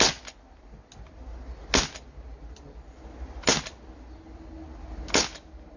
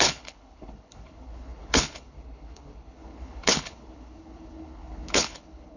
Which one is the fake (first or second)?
second